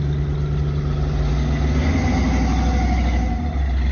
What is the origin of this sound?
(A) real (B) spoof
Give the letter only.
A